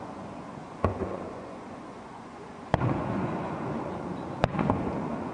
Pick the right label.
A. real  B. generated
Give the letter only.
B